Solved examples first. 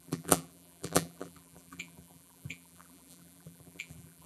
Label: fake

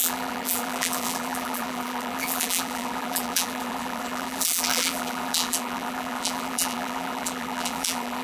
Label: fake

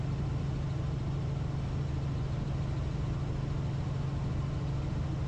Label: real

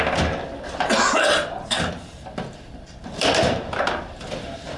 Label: fake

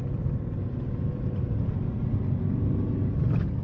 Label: real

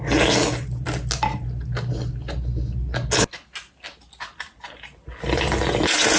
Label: real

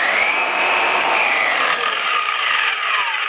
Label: fake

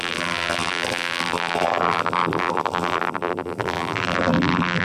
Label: fake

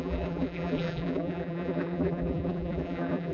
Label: fake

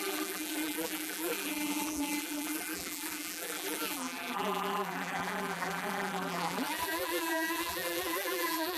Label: fake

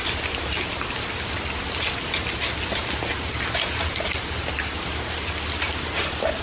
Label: real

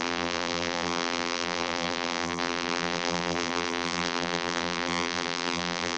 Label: fake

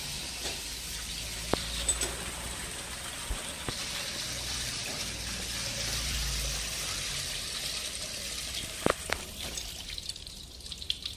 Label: fake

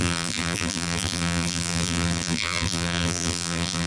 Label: fake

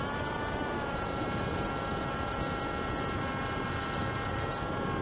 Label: fake